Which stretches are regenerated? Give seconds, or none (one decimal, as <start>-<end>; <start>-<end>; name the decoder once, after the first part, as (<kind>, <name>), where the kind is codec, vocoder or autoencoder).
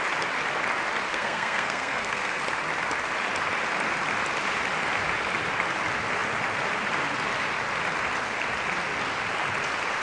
1.1-2.4 (codec, SNAC)